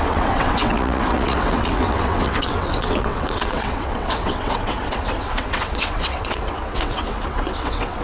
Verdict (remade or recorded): remade